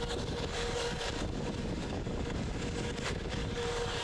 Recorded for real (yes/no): no